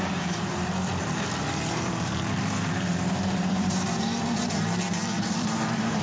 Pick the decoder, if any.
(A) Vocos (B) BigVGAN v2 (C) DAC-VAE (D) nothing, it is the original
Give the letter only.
B